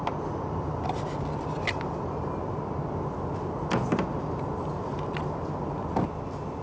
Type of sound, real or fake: real